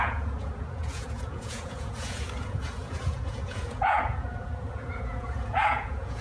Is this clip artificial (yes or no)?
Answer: yes